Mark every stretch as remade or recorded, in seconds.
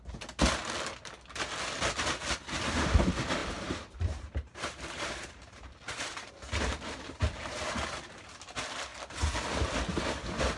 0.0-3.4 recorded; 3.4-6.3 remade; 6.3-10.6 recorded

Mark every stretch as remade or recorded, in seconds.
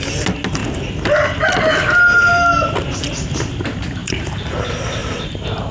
0.0-4.0 recorded; 4.0-4.5 remade; 4.5-5.0 recorded; 5.0-5.7 remade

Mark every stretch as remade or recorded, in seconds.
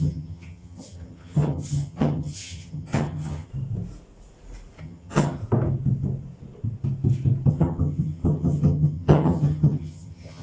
0.0-3.5 remade; 3.5-4.8 recorded; 4.8-5.4 remade; 5.4-7.5 recorded; 7.5-10.4 remade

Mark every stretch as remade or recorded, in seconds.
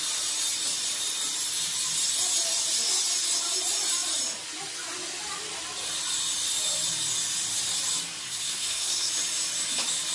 0.0-8.2 recorded; 8.2-9.1 remade; 9.1-10.1 recorded